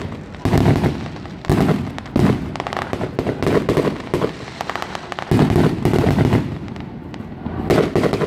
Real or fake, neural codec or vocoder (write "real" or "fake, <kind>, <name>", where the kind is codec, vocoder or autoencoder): real